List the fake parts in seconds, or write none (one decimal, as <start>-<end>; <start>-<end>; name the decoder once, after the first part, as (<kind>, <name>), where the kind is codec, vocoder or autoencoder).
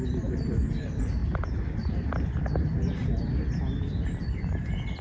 none